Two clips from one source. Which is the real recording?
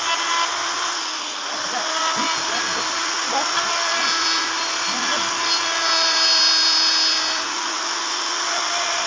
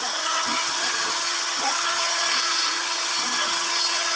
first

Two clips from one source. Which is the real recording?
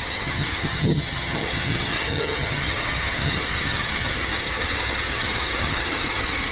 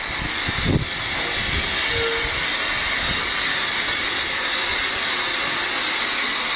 second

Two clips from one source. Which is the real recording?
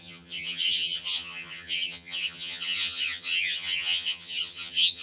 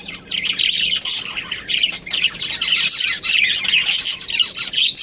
second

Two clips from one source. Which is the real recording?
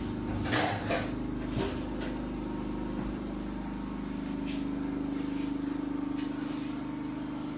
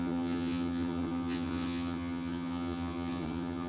first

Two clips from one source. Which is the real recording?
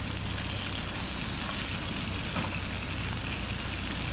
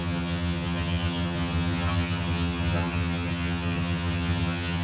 first